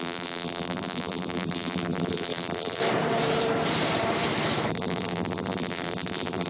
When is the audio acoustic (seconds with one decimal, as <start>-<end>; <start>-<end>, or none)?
2.8-4.7